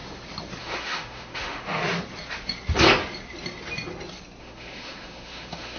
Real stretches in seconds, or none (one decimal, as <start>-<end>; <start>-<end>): 0.0-0.6; 1.8-4.4